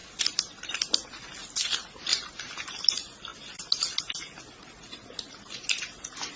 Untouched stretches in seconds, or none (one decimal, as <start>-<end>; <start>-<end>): 0.0-2.1; 2.8-6.4